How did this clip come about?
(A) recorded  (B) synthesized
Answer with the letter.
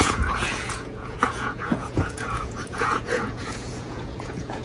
B